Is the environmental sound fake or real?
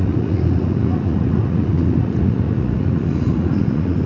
fake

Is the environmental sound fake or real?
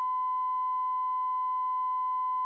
real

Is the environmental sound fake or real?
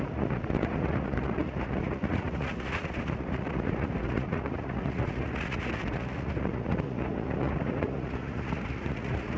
fake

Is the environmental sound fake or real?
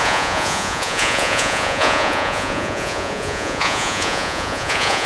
fake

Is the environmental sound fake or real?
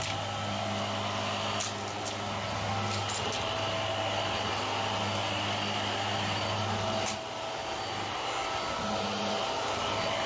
real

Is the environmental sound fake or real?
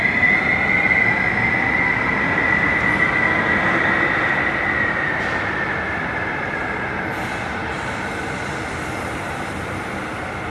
real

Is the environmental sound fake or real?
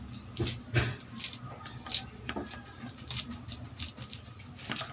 real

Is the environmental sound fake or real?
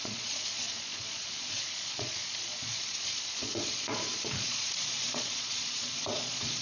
fake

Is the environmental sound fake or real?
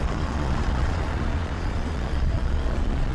fake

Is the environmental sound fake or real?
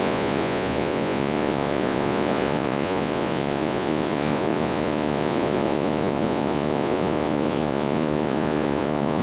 fake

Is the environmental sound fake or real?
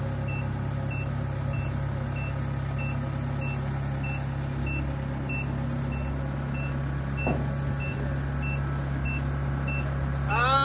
real